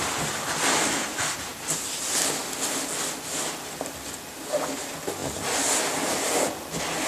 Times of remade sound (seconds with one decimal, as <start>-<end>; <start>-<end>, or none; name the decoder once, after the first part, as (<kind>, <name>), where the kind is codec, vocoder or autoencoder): none